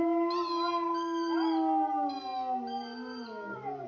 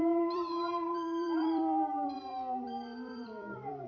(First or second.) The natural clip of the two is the first